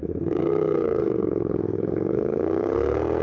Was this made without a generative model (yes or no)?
no